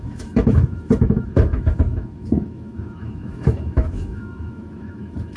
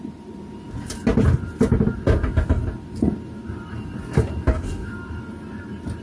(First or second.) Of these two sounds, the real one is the second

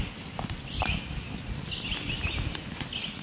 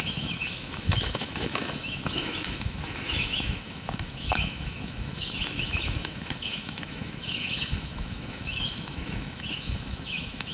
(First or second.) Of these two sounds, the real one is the first